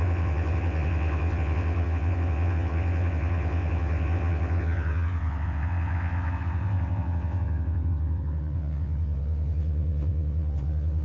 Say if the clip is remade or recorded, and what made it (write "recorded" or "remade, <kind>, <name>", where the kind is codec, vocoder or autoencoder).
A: remade, vocoder, WaveNeXt